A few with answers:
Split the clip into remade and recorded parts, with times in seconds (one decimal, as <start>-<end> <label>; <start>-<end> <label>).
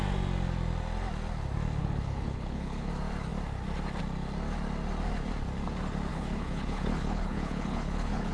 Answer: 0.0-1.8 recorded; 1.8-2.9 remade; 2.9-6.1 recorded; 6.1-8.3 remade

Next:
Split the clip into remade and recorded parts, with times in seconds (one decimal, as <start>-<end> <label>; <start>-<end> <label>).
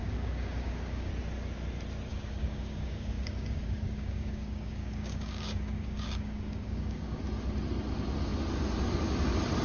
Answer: 0.0-1.1 remade; 1.1-2.1 recorded; 2.1-7.2 remade; 7.2-9.6 recorded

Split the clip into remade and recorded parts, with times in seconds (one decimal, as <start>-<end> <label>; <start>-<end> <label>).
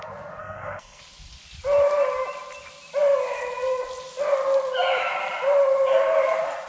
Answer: 0.0-0.4 recorded; 0.4-1.0 remade; 1.0-6.7 recorded